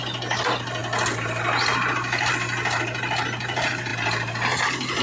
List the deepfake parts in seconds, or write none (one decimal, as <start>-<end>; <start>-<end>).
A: none